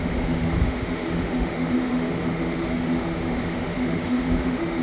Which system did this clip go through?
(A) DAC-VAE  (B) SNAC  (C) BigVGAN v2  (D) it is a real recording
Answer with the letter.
A